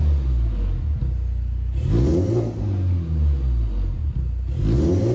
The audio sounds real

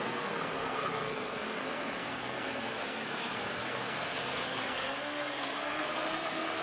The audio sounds fake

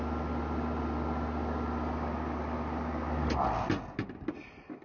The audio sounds real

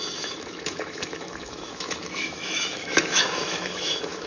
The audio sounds fake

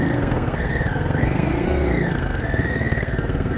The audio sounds fake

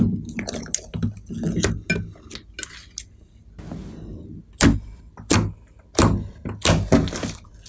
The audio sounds real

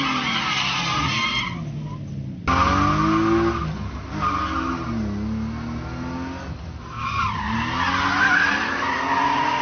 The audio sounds real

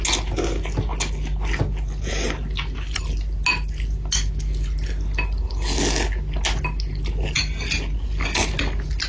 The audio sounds real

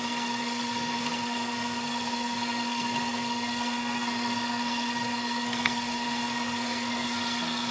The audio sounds fake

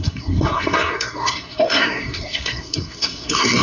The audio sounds fake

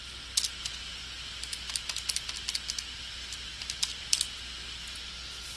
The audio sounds real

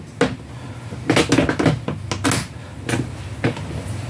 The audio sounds real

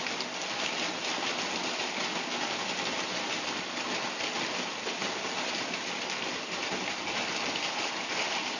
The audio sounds real